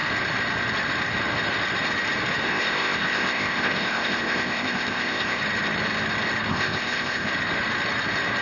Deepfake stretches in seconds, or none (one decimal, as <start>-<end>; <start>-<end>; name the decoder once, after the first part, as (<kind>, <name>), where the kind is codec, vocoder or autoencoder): 2.4-5.4 (codec, ZipCodec); 6.5-7.3